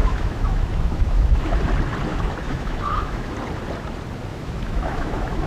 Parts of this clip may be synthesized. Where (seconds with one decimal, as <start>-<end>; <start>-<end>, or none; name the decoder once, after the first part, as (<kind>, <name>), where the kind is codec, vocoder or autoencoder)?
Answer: 0.0-1.6 (autoencoder, DAC-VAE); 2.1-3.3; 4.3-5.5

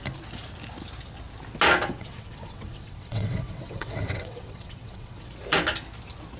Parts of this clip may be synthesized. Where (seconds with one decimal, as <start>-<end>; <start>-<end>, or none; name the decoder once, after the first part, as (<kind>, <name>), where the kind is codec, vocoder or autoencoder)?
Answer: 1.9-5.3 (vocoder, WaveNeXt)

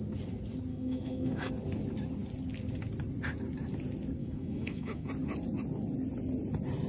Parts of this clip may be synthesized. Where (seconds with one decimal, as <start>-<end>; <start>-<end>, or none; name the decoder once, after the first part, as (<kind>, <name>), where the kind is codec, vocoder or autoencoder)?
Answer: 0.7-1.5 (autoencoder, DAC-VAE); 4.2-5.1

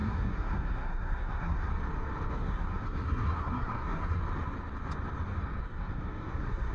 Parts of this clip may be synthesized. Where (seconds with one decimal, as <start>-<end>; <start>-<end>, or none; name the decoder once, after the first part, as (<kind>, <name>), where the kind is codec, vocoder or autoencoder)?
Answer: 0.0-1.7 (codec, SNAC); 2.3-4.2; 5.6-6.7

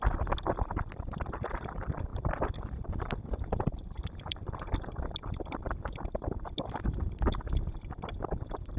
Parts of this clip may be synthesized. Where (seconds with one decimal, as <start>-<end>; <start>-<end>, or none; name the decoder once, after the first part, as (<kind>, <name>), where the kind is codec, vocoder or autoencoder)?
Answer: none

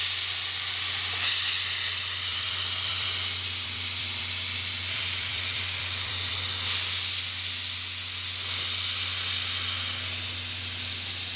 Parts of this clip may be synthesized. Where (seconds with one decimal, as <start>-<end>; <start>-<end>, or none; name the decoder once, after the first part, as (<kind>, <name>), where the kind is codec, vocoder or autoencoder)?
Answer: 2.3-6.3 (vocoder, BigVGAN v2)

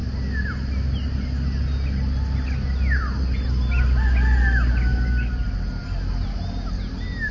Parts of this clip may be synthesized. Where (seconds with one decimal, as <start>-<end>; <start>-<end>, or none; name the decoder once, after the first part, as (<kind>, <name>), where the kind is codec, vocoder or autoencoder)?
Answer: none

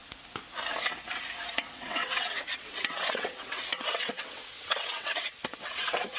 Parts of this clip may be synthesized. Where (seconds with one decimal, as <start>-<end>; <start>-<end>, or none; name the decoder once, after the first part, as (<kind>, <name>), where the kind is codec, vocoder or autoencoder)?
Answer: 1.7-6.2 (vocoder, WaveNeXt)